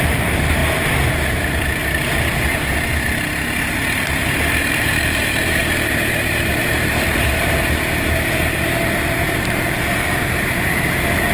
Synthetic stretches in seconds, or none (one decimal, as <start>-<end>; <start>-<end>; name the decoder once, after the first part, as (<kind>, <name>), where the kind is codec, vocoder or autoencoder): 0.0-0.6 (vocoder, BigVGAN v2); 1.1-1.8; 3.7-11.3